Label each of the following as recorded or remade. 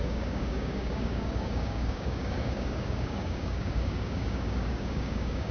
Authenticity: remade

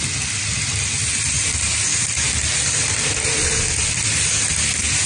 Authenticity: recorded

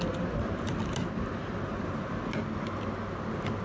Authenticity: recorded